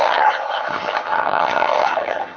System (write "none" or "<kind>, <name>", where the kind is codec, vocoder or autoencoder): vocoder, HiFi-GAN